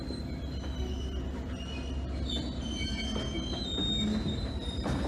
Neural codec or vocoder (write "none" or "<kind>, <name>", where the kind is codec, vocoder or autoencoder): none